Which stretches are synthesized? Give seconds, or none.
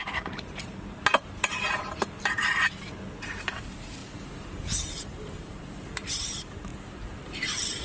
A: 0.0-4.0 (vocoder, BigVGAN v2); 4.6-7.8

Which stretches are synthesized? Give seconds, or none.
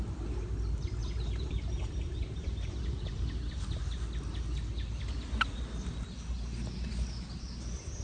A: 1.0-3.8 (vocoder, BigVGAN v2)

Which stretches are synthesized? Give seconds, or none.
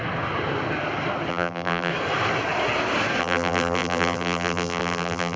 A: 1.3-1.9 (vocoder, BigVGAN v2); 3.2-5.4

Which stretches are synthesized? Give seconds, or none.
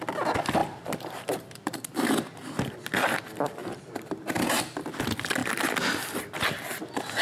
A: 0.6-2.1 (vocoder, BigVGAN v2); 3.6-4.6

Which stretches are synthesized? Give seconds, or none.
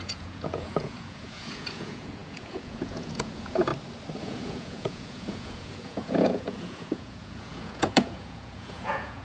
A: 0.0-3.7 (vocoder, Vocos); 4.2-9.2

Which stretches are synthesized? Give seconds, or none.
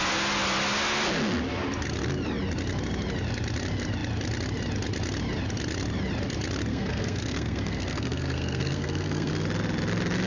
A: 6.7-9.3 (codec, SNAC)